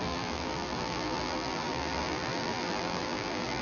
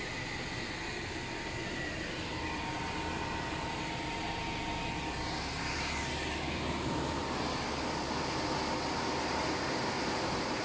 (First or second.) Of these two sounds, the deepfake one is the first